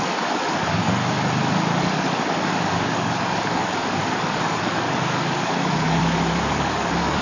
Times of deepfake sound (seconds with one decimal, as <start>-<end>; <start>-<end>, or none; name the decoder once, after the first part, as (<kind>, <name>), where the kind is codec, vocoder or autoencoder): 0.0-1.0 (codec, DAC); 1.8-6.0; 6.5-7.2